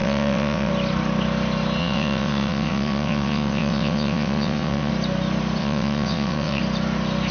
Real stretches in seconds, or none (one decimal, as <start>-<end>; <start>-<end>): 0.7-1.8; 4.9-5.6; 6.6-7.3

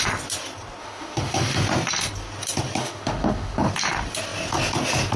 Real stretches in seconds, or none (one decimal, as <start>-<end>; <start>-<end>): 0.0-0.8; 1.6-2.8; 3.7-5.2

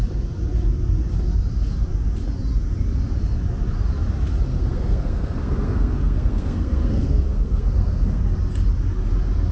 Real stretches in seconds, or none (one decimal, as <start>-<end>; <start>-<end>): 0.0-4.5; 8.2-9.5

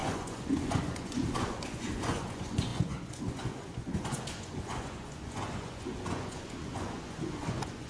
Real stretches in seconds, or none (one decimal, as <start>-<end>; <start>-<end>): none

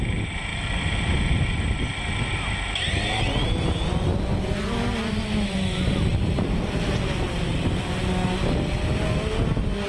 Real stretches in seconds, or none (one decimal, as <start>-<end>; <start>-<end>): 0.0-9.9